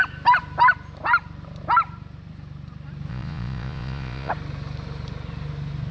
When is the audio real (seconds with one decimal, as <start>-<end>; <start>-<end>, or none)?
0.0-3.1; 4.3-5.9